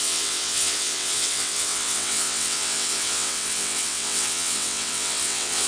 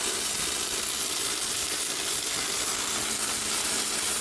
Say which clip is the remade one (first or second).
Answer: first